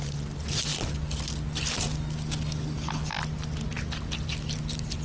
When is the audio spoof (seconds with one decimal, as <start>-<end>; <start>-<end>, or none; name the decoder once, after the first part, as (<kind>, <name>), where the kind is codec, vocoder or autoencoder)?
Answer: none